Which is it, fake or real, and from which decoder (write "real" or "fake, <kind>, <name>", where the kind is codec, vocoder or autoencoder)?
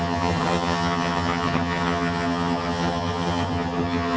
fake, vocoder, HiFi-GAN